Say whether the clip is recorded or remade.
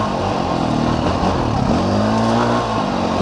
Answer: recorded